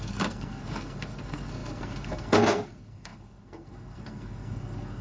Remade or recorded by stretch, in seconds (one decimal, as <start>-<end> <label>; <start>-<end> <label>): 0.0-5.0 remade